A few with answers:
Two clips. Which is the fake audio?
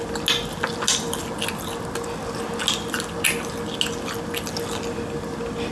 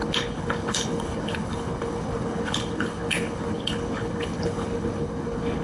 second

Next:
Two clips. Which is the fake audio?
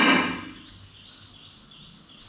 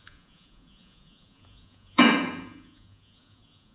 second